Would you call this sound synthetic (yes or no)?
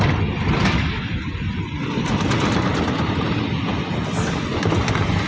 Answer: no